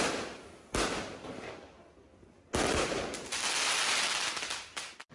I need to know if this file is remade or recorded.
recorded